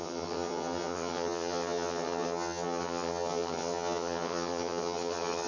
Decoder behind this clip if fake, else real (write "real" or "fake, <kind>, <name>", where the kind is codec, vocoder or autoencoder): fake, vocoder, HiFi-GAN